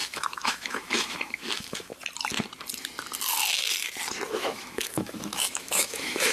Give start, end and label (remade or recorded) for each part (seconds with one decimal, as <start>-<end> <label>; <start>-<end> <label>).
0.0-1.9 remade; 1.9-4.3 recorded; 4.3-6.3 remade